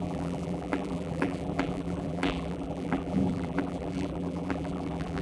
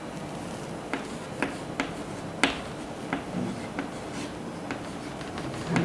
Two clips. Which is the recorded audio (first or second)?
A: second